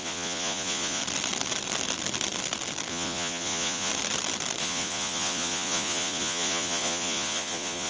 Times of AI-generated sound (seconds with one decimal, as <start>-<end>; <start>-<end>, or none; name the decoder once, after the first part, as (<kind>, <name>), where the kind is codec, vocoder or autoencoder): 0.0-1.0 (vocoder, Vocos); 2.9-3.9; 4.6-7.9